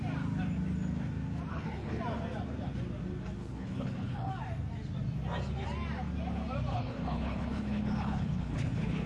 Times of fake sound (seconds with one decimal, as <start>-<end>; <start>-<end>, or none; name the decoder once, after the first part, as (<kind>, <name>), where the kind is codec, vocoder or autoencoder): 1.5-2.0 (codec, HILCodec); 3.4-4.3; 6.7-9.1